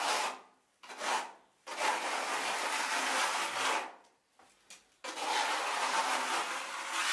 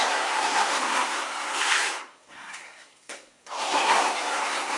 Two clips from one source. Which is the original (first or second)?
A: first